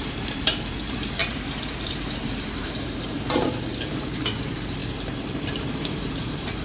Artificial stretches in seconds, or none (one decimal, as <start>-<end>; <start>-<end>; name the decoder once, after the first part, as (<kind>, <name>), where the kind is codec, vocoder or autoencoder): 0.0-6.6 (vocoder, BigVGAN v2)